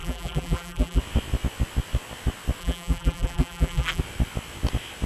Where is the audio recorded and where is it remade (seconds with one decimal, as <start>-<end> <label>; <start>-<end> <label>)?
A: 0.0-1.0 remade; 1.0-2.6 recorded; 2.6-4.0 remade; 4.0-5.1 recorded